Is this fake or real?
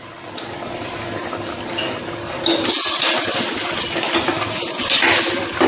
real